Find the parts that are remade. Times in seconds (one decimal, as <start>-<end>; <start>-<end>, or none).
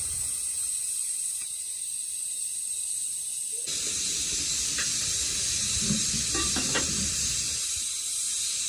0.0-8.7